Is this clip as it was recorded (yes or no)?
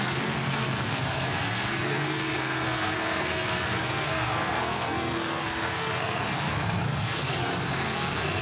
no